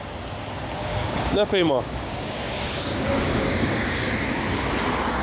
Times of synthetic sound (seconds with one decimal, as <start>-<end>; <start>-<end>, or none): 0.9-4.0